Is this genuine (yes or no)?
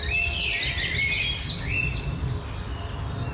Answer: yes